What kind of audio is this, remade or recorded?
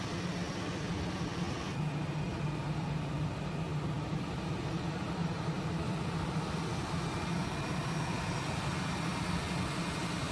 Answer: recorded